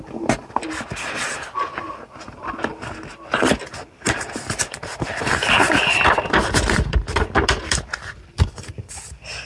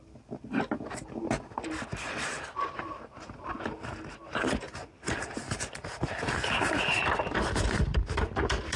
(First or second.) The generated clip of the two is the second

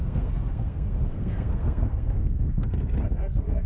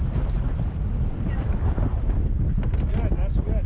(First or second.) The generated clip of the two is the first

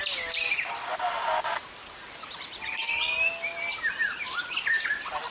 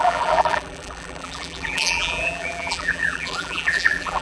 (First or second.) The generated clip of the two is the second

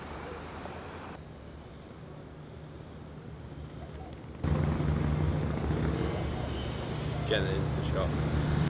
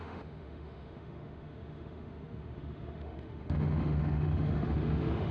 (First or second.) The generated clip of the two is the second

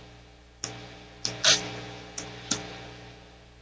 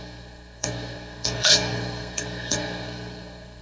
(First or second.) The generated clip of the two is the second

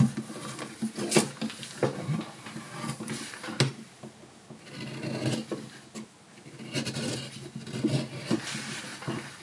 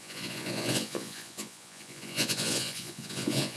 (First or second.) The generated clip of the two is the second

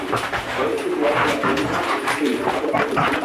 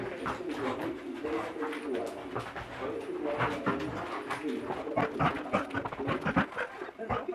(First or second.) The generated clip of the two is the first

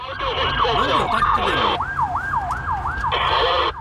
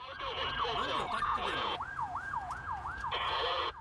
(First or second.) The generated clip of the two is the second